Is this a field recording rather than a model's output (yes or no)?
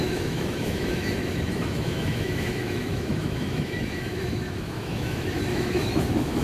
no